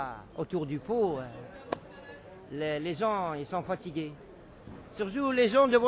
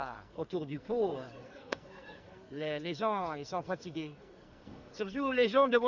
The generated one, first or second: second